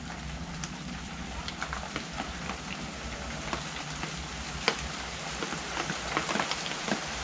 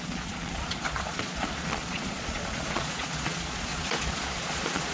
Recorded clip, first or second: first